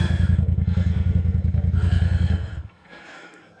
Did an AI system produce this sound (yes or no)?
yes